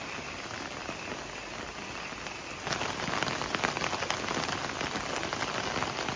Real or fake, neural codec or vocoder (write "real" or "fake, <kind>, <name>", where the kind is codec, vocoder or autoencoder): real